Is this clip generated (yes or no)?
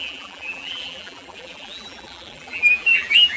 yes